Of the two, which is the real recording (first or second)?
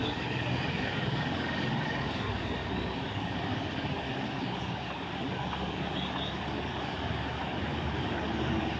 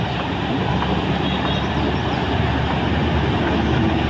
second